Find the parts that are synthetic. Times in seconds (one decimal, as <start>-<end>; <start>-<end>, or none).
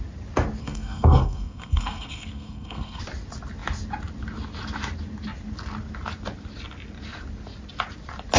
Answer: 0.6-3.0